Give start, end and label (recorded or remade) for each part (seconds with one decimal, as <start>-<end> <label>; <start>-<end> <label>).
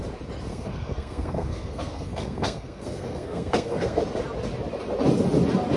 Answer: 0.0-0.5 recorded; 0.5-4.0 remade; 4.0-5.8 recorded